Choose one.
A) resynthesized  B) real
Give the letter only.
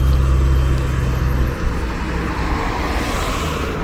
B